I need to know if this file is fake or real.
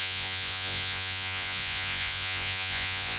fake